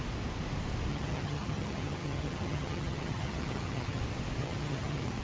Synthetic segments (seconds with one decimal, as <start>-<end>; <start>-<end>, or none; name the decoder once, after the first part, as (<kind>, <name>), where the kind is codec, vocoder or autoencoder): 0.9-4.0 (vocoder, HiFi-GAN); 4.4-5.2